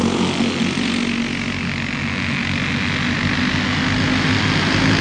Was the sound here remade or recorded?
recorded